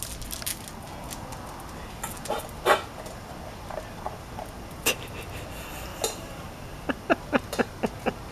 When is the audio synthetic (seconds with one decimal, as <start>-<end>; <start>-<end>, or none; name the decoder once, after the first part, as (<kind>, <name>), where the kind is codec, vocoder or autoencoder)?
5.9-6.5 (vocoder, BigVGAN v2)